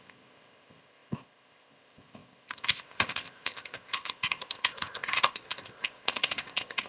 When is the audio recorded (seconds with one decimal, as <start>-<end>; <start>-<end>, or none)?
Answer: none

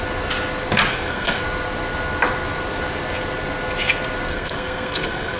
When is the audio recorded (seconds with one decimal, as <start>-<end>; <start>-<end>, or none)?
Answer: 0.0-0.9; 1.4-4.3